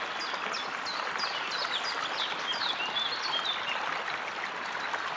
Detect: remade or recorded recorded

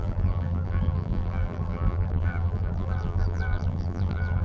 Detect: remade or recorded remade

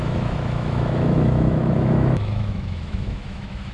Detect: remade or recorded remade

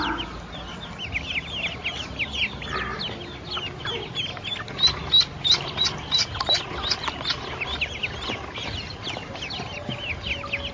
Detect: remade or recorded recorded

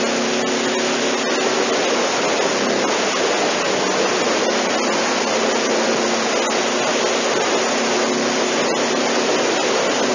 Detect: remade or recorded recorded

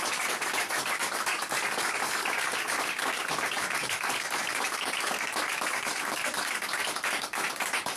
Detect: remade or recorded remade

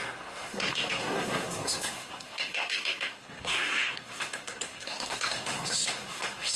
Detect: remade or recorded remade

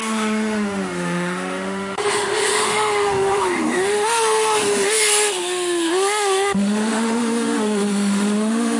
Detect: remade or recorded remade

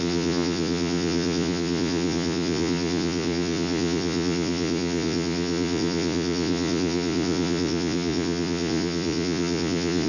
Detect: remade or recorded remade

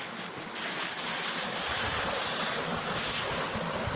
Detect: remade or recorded recorded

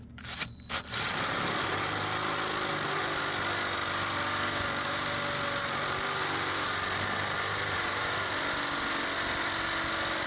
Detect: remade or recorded recorded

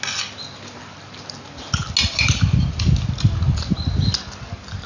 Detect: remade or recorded recorded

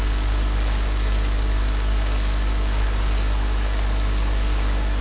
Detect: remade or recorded remade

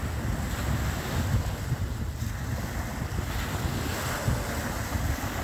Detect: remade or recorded recorded